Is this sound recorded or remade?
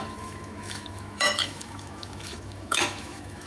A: remade